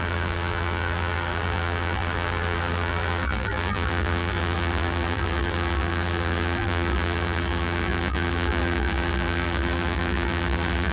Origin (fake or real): fake